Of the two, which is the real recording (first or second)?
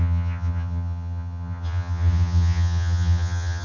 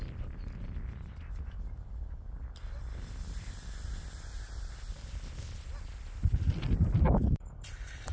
second